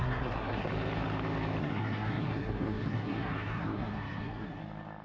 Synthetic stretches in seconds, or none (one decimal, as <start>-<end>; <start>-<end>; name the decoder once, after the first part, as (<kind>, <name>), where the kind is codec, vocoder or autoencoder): 0.0-0.7 (codec, SNAC); 1.6-4.6